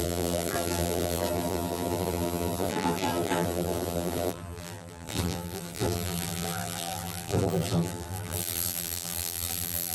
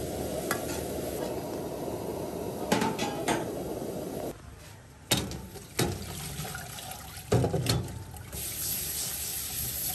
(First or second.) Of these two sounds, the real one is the second